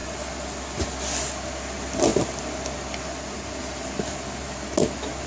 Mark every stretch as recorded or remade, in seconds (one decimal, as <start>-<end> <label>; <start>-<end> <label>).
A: 0.0-5.3 recorded